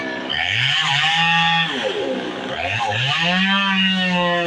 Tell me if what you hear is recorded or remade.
remade